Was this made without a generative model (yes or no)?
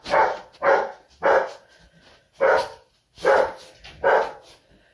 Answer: yes